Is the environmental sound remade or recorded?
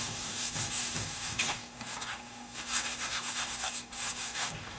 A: remade